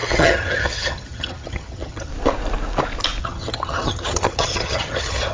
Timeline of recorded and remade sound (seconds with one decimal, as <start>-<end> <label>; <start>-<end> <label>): 0.0-2.1 remade; 2.1-3.2 recorded; 3.2-5.3 remade